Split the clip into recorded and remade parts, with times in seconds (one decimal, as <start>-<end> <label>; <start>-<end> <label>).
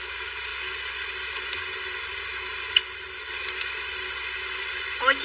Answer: 0.0-5.2 recorded